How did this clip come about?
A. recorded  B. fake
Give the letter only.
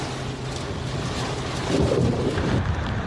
A